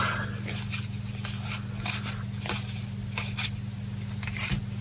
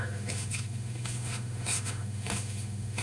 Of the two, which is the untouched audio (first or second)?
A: first